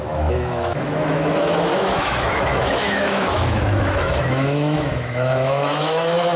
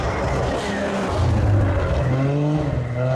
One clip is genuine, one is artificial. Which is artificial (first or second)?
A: first